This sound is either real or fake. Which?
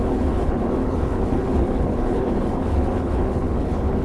fake